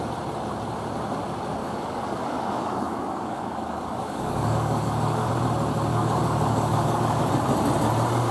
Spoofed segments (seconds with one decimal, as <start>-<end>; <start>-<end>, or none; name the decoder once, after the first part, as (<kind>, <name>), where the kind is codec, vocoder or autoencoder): 1.6-5.3 (codec, DAC); 5.9-7.3